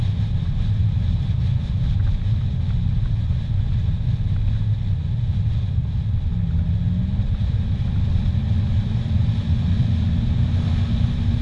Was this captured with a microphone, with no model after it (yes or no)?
yes